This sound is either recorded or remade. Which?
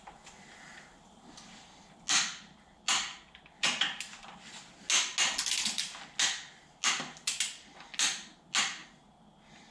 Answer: recorded